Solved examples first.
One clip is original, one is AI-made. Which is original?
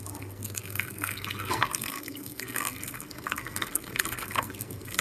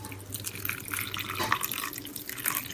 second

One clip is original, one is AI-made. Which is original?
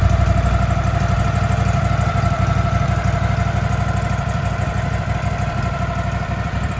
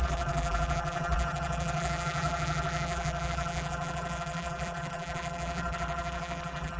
first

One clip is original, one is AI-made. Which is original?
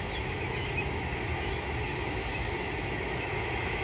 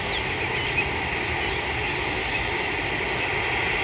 second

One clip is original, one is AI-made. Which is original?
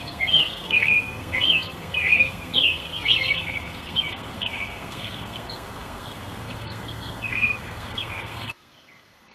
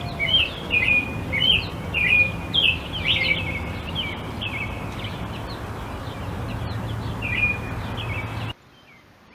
second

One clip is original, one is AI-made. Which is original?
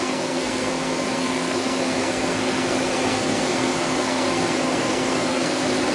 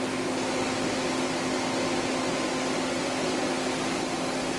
second